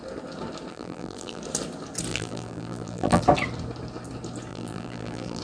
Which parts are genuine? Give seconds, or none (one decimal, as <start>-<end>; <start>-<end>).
0.0-0.7; 1.4-2.1; 3.2-4.5